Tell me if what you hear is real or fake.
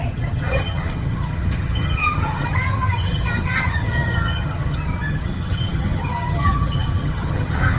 fake